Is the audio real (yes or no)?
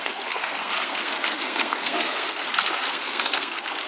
no